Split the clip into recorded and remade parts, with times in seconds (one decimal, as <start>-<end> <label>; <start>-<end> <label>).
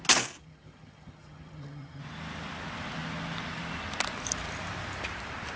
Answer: 0.0-0.4 recorded; 0.4-2.0 remade; 2.0-5.6 recorded